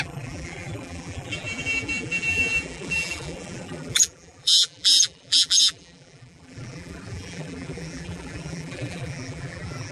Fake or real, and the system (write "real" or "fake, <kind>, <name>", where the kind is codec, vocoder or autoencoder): fake, vocoder, BigVGAN v2